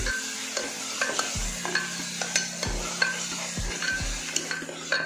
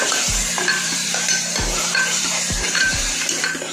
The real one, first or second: first